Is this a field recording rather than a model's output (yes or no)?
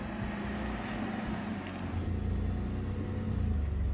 yes